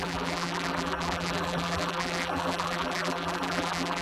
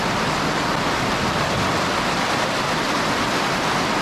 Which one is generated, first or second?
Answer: first